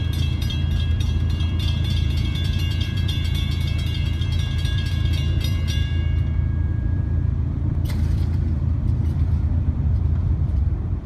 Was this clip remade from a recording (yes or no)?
yes